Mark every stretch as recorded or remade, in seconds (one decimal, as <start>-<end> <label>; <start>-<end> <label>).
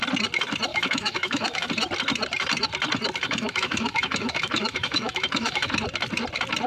0.0-0.7 recorded; 0.7-1.7 remade; 1.7-3.2 recorded; 3.2-5.8 remade; 5.8-6.7 recorded